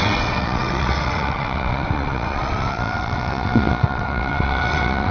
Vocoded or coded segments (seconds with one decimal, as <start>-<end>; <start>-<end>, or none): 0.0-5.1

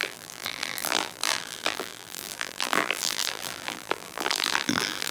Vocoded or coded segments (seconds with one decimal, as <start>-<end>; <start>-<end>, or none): 0.0-5.1

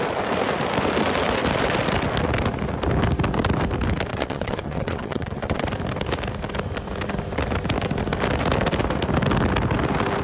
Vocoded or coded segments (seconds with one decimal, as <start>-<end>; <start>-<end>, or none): 4.1-5.6